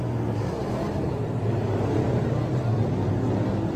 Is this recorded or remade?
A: recorded